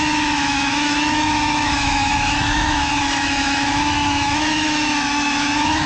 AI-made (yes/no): yes